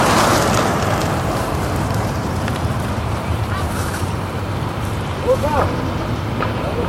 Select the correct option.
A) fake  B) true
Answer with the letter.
A